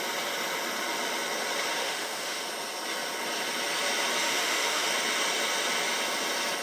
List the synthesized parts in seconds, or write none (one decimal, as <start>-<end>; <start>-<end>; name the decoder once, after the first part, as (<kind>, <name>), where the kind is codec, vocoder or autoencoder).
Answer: 1.8-2.5 (autoencoder, DAC-VAE); 4.2-4.9